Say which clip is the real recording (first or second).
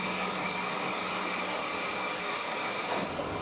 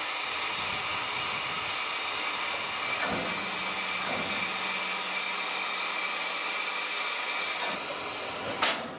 second